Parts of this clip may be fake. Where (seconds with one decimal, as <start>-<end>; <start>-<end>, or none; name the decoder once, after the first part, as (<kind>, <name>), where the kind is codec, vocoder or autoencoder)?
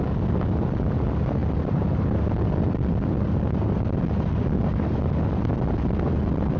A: none